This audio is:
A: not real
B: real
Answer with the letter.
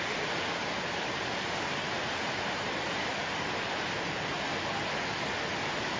B